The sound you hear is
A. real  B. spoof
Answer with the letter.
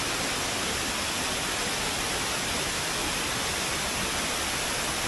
A